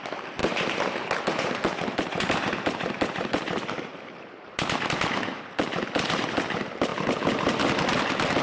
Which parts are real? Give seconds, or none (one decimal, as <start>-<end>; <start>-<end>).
0.0-0.4; 5.4-8.4